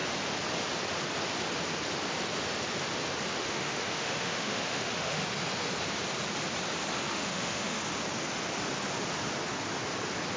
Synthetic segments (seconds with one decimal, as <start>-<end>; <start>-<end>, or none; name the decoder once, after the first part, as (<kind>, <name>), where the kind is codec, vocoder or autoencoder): 3.4-5.2 (autoencoder, DAC-VAE); 7.1-7.8